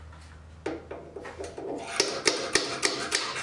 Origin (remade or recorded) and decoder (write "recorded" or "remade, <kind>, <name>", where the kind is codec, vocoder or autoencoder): recorded